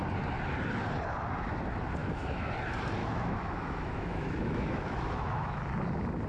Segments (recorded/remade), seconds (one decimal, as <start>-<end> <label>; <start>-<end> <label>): 0.0-2.0 recorded; 2.0-2.5 remade; 2.5-3.0 recorded; 3.0-5.6 remade; 5.6-6.3 recorded